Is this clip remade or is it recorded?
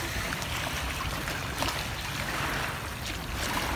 recorded